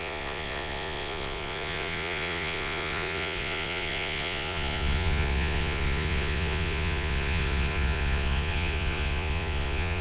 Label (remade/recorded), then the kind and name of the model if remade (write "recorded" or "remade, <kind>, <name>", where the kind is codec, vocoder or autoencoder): remade, vocoder, Vocos